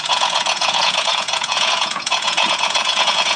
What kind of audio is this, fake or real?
fake